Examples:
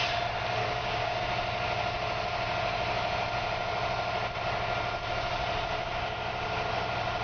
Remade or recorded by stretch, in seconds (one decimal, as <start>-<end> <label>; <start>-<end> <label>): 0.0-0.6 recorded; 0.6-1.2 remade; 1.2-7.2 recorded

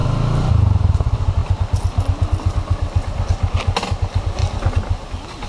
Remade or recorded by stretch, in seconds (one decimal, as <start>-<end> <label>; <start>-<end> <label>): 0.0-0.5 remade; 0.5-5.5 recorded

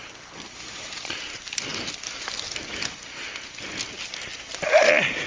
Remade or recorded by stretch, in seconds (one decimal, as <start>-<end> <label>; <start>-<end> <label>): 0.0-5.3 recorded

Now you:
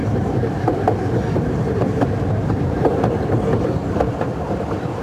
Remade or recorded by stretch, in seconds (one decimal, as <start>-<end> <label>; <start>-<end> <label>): 0.0-3.0 remade; 3.0-5.0 recorded

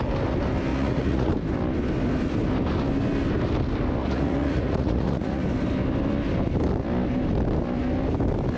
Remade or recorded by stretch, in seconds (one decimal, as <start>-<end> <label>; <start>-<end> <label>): 0.0-0.7 recorded; 0.7-1.3 remade; 1.3-4.0 recorded; 4.0-5.4 remade; 5.4-8.6 recorded

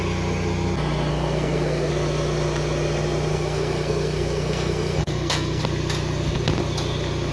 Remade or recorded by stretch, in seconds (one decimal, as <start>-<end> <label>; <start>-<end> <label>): 0.0-1.1 recorded; 1.1-1.9 remade; 1.9-3.3 recorded; 3.3-5.6 remade; 5.6-7.3 recorded